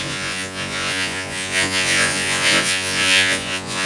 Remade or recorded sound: remade